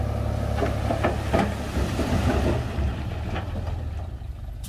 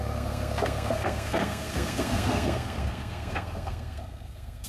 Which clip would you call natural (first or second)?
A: first